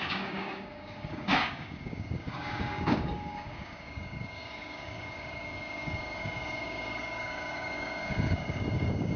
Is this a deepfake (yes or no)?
yes